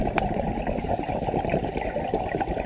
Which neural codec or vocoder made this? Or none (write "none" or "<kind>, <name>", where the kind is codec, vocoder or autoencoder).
none